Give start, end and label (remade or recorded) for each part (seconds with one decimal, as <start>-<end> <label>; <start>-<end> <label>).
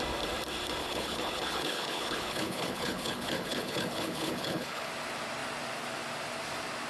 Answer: 0.0-0.8 recorded; 0.8-4.9 remade; 4.9-6.9 recorded